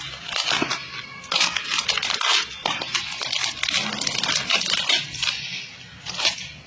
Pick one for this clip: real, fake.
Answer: real